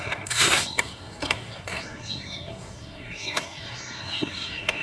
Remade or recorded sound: remade